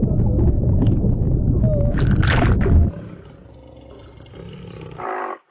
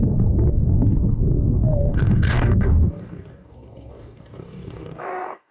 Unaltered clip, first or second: first